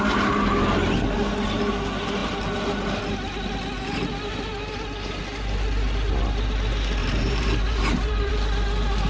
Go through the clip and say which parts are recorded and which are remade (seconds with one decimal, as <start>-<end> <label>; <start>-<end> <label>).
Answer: 0.0-7.0 recorded; 7.0-8.3 remade; 8.3-9.1 recorded